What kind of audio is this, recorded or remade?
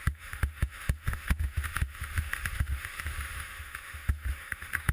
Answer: remade